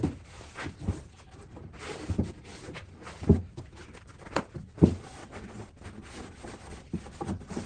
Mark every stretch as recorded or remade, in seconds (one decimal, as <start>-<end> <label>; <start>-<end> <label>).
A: 0.0-5.2 recorded; 5.2-5.8 remade; 5.8-7.7 recorded